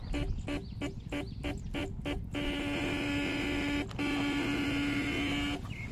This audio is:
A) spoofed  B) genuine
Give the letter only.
B